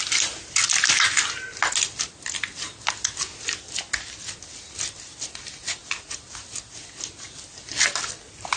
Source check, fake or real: real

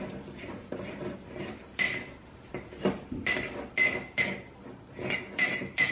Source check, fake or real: real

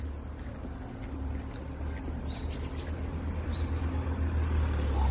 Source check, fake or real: real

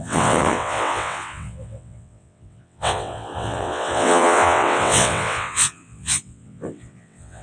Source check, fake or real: fake